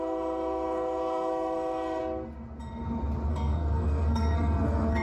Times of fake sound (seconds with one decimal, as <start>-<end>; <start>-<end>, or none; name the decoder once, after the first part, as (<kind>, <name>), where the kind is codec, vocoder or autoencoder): 0.0-2.0 (codec, SNAC); 3.3-5.0